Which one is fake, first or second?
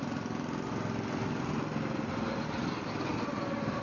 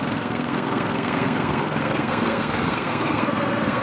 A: second